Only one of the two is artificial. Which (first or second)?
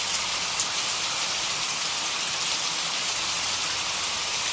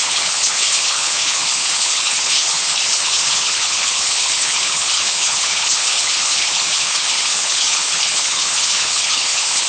second